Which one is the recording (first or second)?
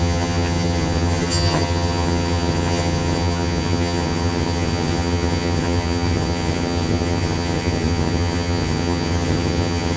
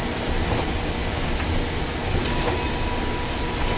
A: second